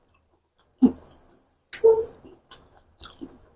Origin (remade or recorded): recorded